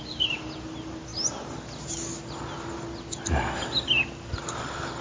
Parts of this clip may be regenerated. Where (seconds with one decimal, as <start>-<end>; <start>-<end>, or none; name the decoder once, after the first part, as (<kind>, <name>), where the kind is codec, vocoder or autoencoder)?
none